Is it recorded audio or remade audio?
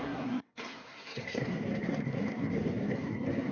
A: remade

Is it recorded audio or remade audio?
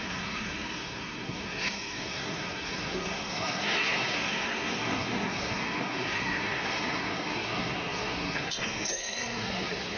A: remade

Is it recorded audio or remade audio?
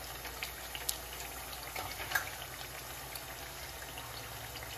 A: recorded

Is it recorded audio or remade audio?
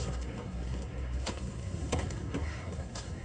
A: remade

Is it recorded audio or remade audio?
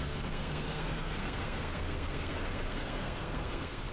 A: remade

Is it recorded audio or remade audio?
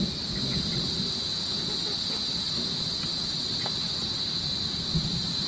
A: recorded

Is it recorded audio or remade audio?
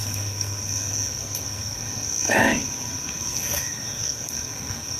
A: remade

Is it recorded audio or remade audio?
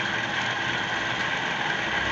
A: recorded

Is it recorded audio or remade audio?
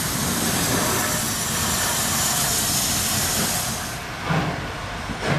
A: recorded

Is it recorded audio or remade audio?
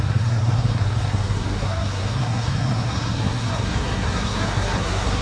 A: remade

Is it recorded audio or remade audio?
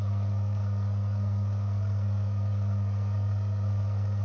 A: remade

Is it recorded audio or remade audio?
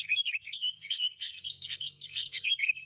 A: remade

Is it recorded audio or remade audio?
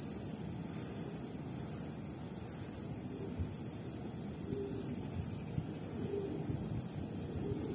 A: recorded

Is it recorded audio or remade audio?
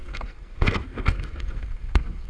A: remade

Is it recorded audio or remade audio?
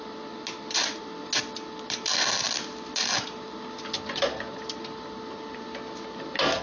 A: recorded